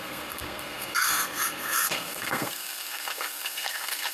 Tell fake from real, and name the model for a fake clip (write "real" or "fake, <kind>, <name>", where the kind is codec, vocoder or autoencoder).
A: fake, codec, SNAC